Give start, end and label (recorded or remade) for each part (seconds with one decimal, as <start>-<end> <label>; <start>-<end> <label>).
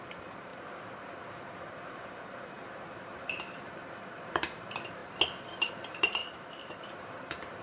0.0-5.0 remade; 5.0-5.7 recorded; 5.7-7.6 remade